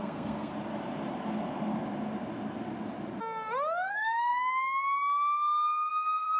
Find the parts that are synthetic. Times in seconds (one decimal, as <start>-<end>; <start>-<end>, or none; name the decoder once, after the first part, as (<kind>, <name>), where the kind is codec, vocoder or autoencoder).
0.0-0.5 (codec, SNAC); 3.9-4.3; 5.9-6.4